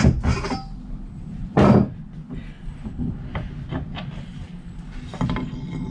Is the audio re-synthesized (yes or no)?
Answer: no